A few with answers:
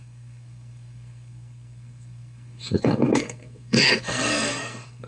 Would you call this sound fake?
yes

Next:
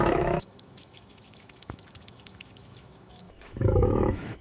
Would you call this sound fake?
yes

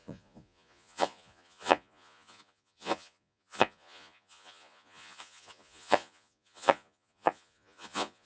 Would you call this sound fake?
yes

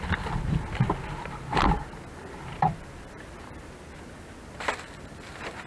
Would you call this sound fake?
no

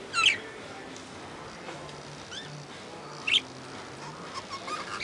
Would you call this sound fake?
no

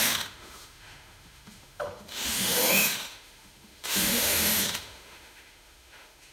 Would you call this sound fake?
yes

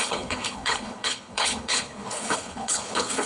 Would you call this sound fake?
yes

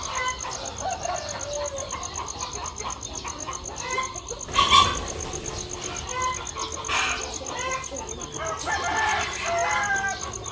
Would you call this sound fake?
no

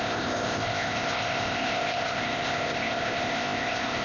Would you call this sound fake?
yes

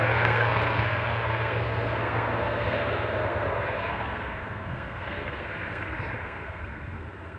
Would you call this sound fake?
yes